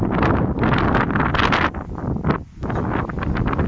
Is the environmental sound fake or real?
real